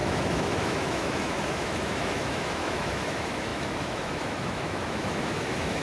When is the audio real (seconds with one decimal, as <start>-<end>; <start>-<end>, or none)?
none